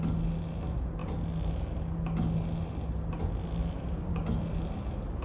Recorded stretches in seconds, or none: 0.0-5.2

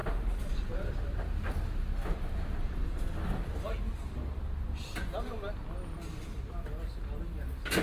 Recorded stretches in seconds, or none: 0.0-7.8

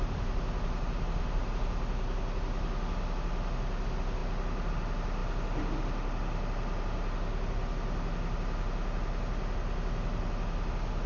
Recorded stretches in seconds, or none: 0.0-11.1